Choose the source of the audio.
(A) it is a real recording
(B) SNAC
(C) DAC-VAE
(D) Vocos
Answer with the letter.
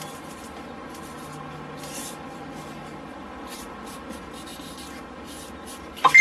A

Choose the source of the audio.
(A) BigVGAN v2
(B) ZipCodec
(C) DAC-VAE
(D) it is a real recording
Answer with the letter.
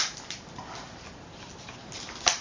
D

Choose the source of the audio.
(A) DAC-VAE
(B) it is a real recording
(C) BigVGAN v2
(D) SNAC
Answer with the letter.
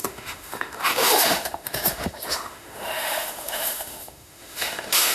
A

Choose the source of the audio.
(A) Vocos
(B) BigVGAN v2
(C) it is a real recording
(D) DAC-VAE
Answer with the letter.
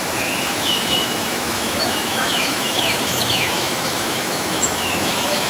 D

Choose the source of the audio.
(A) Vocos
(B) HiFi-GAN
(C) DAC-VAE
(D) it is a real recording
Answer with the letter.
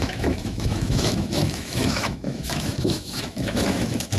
C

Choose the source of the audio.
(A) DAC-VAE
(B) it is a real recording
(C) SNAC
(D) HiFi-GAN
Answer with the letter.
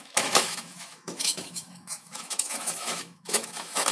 A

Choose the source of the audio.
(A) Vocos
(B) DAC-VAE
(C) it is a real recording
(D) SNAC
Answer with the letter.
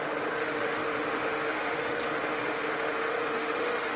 B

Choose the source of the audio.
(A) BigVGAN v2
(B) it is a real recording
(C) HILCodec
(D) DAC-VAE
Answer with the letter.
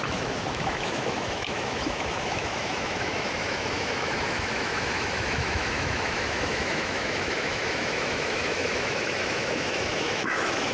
D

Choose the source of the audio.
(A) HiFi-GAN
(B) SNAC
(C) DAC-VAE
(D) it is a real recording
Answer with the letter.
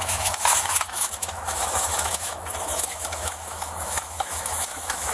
C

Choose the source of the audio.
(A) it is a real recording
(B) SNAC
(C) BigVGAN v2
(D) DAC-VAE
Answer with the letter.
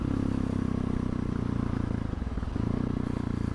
A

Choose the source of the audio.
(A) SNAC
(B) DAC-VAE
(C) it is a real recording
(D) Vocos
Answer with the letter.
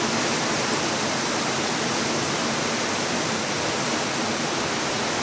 C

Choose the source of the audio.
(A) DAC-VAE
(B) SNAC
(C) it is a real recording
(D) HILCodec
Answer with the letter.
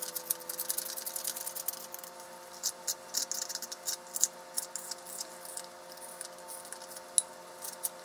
C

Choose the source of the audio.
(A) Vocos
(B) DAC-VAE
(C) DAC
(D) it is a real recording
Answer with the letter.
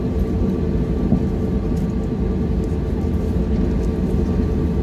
D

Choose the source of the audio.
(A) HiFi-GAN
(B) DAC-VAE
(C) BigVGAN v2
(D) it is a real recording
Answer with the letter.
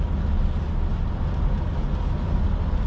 D